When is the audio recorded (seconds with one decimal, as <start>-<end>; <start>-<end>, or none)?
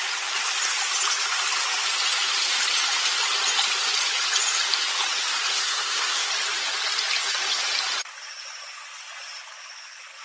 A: 0.0-5.5; 6.3-10.2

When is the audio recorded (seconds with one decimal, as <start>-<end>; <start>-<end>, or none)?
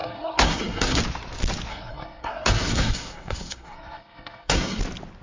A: 1.0-1.7; 4.8-5.2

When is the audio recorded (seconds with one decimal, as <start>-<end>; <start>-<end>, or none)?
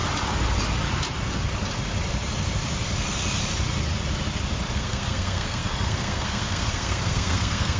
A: 0.0-4.7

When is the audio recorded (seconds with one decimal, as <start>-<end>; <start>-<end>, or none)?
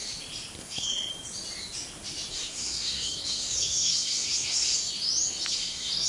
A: 0.0-0.6; 1.1-2.3; 4.8-5.5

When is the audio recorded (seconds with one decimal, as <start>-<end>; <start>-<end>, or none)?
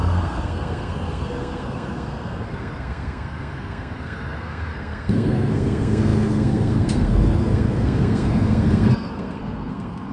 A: none